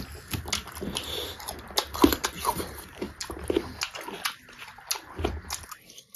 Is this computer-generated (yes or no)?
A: no